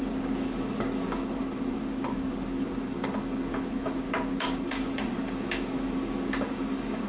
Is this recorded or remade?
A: remade